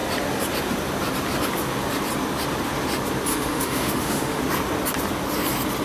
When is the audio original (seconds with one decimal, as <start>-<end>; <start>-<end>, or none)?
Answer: 0.0-3.3; 4.4-5.8